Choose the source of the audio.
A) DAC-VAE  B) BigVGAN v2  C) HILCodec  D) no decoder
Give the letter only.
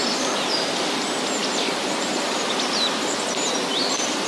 D